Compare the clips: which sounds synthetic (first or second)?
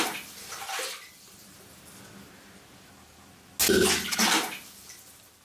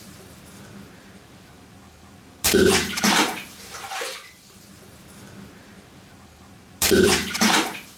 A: second